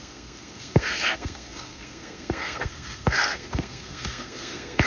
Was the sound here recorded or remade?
remade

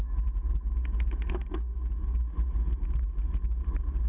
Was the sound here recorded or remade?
recorded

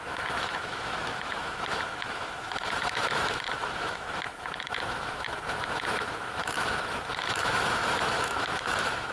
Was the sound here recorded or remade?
remade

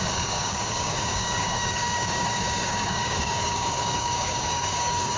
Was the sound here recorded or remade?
remade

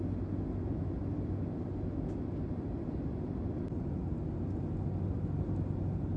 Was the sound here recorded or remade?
recorded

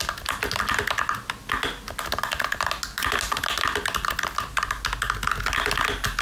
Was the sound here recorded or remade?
recorded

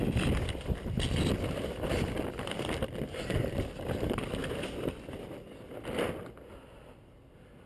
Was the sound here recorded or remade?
recorded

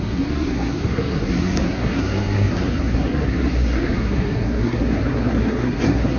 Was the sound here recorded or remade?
remade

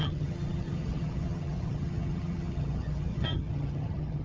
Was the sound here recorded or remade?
remade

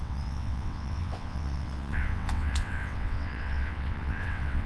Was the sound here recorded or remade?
remade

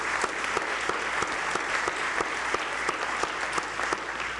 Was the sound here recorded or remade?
recorded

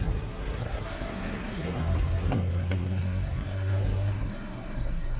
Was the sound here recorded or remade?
remade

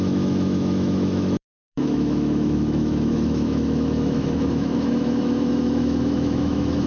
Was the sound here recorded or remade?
remade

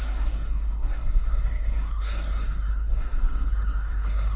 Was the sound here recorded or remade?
remade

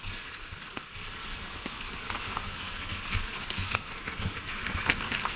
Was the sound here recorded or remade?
remade